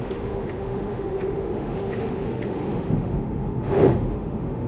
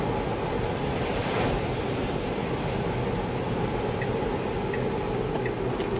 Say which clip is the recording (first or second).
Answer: second